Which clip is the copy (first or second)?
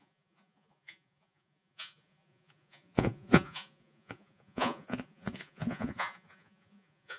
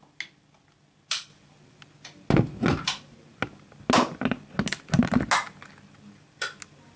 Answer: first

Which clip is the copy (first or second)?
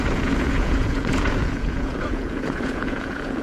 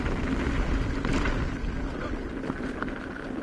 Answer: first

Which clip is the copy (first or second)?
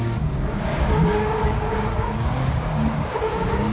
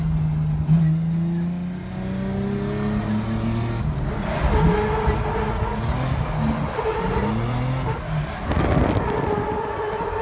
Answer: first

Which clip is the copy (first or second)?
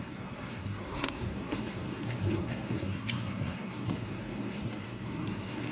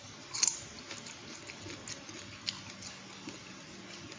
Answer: first